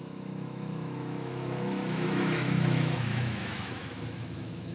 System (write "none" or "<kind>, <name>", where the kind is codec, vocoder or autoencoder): autoencoder, DAC-VAE